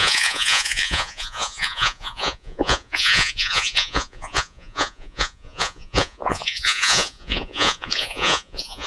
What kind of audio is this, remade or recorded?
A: remade